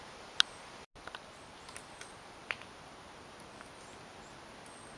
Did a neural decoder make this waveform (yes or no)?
no